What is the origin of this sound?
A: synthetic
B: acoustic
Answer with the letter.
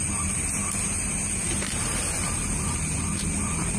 B